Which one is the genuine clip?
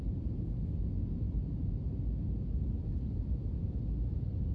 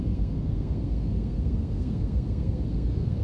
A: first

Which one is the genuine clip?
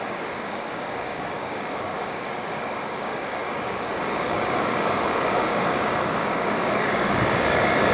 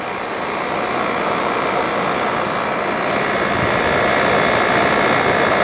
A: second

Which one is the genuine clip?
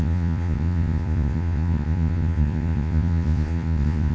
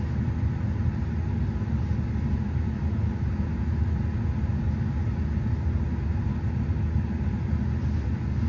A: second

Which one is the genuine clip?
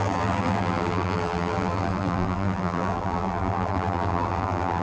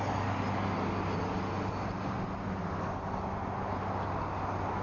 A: second